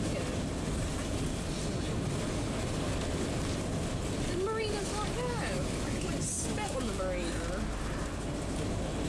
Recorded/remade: recorded